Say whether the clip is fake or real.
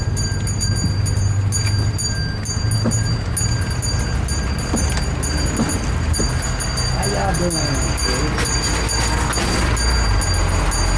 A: real